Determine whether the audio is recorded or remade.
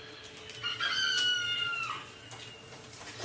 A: recorded